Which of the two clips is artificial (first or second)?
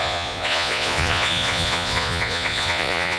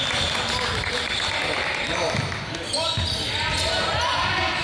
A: first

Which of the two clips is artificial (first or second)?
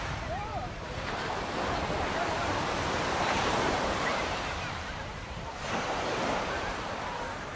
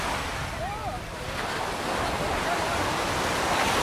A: first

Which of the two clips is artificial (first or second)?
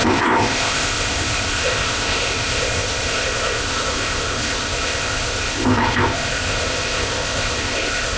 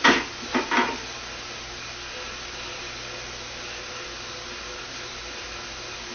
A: first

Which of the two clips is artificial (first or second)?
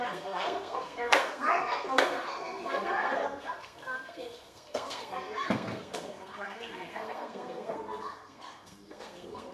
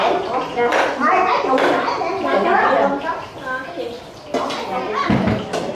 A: first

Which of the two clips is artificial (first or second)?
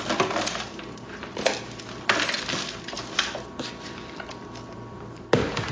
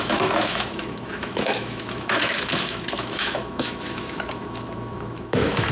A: second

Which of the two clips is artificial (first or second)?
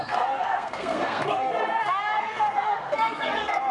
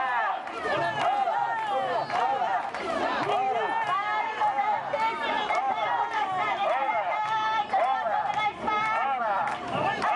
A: first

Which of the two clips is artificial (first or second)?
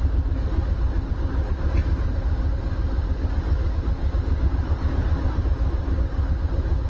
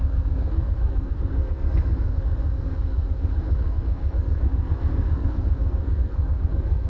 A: second